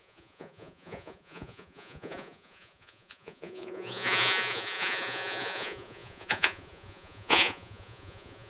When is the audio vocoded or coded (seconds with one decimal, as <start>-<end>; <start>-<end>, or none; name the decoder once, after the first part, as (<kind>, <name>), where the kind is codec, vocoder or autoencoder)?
0.0-8.5 (vocoder, Vocos)